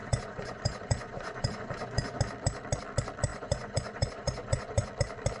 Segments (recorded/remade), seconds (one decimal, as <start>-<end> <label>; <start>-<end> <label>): 0.0-2.2 remade; 2.2-3.3 recorded; 3.3-4.9 remade; 4.9-5.4 recorded